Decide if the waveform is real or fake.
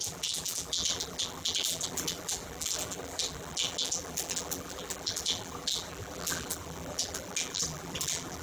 fake